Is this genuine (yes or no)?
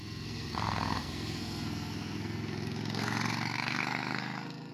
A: no